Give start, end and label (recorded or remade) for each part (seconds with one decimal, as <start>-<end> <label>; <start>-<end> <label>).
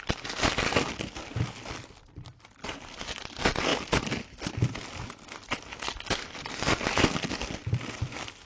0.0-8.5 recorded